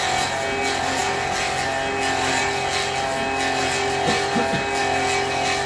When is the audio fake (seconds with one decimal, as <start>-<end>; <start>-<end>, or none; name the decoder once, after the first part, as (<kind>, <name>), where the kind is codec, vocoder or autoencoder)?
none